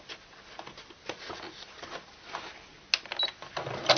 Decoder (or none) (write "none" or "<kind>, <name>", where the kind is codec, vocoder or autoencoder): none